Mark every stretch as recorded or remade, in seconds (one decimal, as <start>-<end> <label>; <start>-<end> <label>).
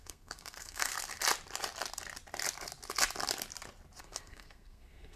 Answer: 0.0-0.9 remade; 0.9-4.0 recorded; 4.0-5.2 remade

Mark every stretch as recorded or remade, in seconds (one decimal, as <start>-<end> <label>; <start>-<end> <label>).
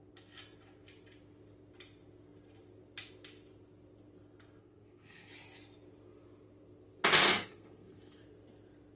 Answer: 0.0-4.6 recorded; 4.6-5.3 remade; 5.3-7.2 recorded; 7.2-8.2 remade; 8.2-9.0 recorded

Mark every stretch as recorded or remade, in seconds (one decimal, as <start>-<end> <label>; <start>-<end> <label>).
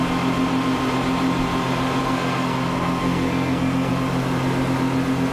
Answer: 0.0-2.0 recorded; 2.0-3.9 remade; 3.9-5.3 recorded